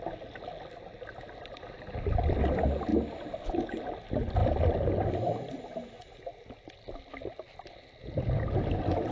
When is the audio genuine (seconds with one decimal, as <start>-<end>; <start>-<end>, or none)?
0.0-9.1